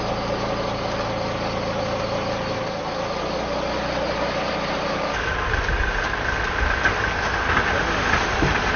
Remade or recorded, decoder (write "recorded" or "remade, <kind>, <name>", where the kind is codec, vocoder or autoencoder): recorded